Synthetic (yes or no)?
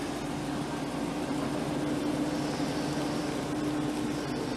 no